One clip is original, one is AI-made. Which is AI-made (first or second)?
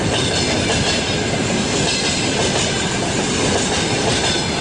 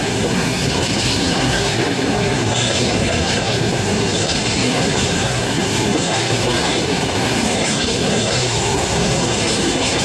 second